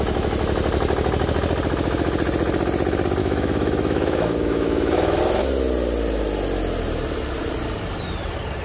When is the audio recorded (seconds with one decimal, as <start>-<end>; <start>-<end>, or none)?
0.0-3.2; 5.2-8.6